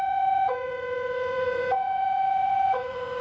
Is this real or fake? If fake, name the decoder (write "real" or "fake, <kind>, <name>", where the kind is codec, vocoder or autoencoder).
fake, vocoder, Vocos